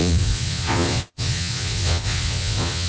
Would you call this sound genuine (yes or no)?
no